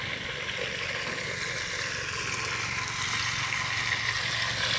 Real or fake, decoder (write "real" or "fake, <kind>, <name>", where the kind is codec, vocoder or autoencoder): real